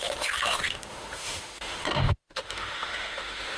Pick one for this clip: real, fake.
fake